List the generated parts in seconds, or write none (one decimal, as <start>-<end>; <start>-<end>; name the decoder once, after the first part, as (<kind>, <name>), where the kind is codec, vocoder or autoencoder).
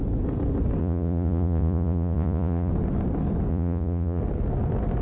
0.8-2.7 (vocoder, Vocos); 3.5-4.2